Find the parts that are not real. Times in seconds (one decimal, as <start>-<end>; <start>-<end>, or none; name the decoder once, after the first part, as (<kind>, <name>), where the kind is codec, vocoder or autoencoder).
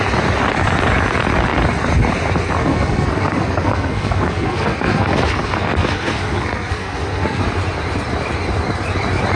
2.6-7.4 (codec, SNAC)